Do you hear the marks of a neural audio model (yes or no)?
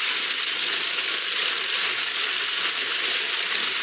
yes